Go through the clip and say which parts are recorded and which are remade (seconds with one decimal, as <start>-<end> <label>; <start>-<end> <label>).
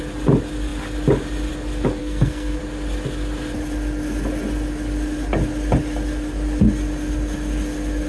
0.0-2.0 recorded; 2.0-2.6 remade; 2.6-8.1 recorded